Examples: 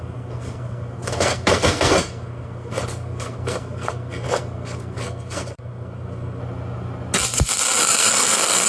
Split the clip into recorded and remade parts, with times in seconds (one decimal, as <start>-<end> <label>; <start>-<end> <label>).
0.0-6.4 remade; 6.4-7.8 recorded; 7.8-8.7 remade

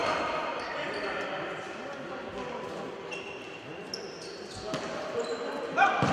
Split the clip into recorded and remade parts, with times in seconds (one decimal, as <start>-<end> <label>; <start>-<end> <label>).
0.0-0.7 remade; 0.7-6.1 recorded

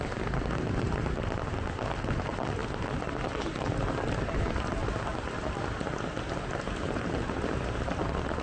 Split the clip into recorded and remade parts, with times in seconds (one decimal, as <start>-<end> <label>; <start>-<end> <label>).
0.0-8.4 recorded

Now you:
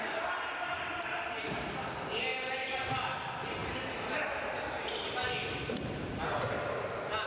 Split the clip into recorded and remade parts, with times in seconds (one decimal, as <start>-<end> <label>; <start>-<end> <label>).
0.0-7.3 recorded

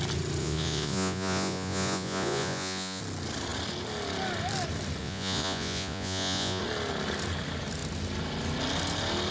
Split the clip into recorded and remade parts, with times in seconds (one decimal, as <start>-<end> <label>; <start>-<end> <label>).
0.0-0.4 recorded; 0.4-3.0 remade; 3.0-5.0 recorded; 5.0-6.6 remade; 6.6-9.3 recorded